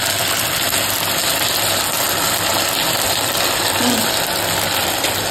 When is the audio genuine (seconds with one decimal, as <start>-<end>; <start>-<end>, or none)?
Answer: 0.0-5.3